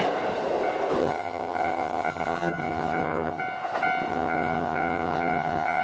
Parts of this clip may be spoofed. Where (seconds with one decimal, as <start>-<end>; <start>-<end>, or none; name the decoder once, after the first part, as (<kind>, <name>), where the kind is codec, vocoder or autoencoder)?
1.0-3.4 (vocoder, HiFi-GAN); 4.1-5.8